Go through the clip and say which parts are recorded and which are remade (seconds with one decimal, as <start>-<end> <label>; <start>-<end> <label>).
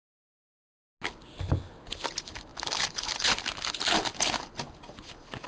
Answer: 0.0-5.5 recorded